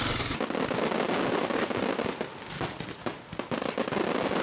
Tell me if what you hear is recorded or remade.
recorded